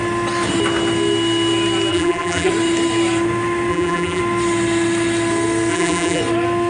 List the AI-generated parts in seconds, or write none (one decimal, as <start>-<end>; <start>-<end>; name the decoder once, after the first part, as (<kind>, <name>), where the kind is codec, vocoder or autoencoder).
1.9-2.5 (vocoder, BigVGAN v2); 3.7-4.2; 5.7-6.2